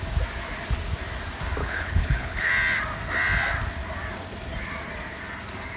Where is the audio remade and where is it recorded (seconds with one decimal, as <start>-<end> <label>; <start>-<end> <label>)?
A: 0.0-1.6 recorded; 1.6-2.5 remade; 2.5-5.8 recorded